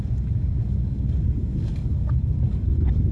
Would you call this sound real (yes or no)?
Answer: no